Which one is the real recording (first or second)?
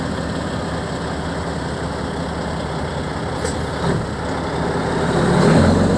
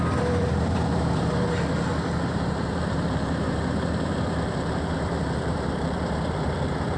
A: first